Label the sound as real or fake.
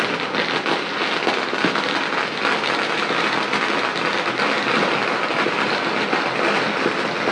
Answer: real